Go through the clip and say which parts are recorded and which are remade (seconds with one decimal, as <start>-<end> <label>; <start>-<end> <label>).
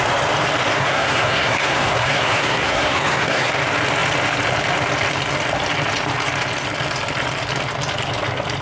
0.0-0.7 recorded; 0.7-3.5 remade; 3.5-8.6 recorded